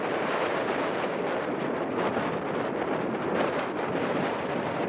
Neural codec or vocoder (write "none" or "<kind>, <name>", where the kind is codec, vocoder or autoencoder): vocoder, BigVGAN v2